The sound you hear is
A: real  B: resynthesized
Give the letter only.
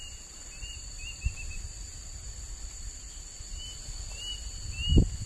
A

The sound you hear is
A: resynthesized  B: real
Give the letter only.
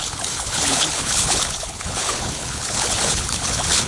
A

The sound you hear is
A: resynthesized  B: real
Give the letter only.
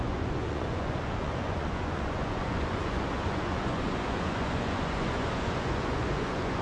A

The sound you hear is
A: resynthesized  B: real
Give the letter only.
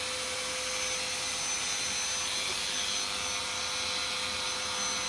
B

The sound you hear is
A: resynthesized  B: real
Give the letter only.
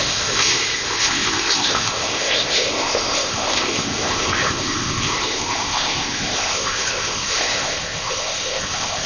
A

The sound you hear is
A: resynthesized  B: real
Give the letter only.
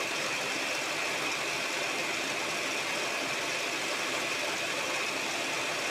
B